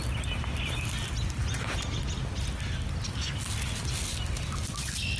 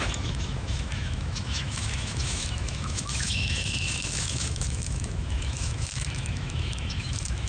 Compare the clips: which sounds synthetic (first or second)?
second